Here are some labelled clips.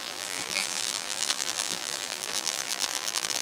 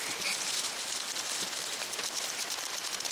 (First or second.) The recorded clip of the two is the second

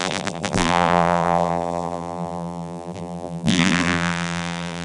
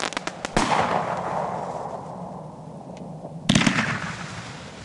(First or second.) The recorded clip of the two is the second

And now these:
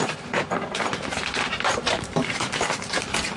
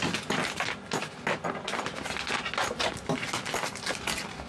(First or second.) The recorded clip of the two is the second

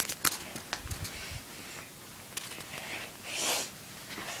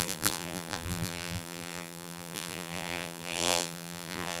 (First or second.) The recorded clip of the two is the first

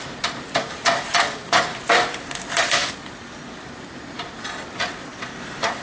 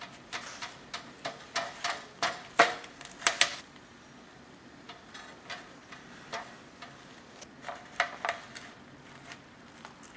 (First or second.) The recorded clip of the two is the second